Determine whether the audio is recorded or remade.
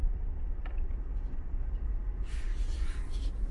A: recorded